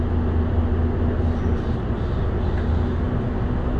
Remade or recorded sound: recorded